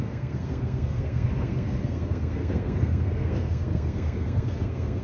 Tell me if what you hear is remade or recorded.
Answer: remade